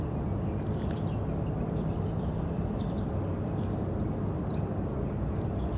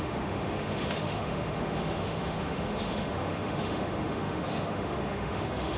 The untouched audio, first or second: first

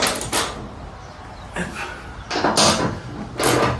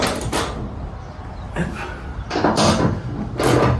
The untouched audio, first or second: first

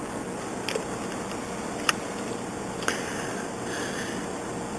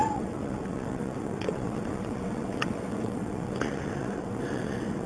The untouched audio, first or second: first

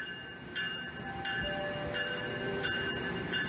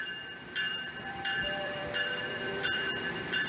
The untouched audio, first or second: first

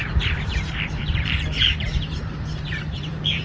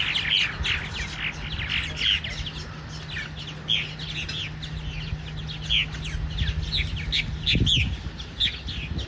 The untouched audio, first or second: second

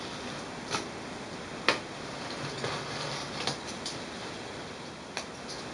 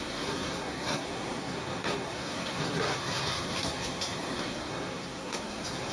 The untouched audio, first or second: first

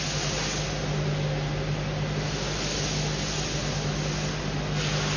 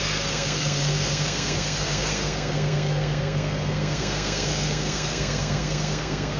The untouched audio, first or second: first